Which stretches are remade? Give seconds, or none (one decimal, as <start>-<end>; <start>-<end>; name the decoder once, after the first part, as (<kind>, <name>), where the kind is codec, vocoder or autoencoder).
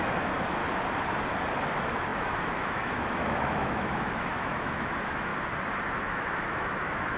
0.0-0.6 (autoencoder, DAC-VAE); 1.7-5.3; 6.0-7.2